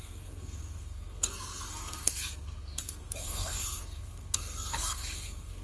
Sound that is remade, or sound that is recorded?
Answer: remade